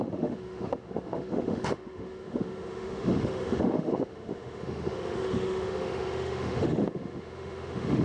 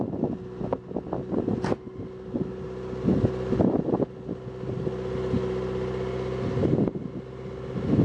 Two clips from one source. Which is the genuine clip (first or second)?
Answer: second